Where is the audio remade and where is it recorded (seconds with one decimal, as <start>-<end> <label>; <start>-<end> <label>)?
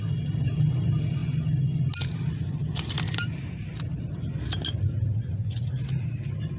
0.0-6.6 recorded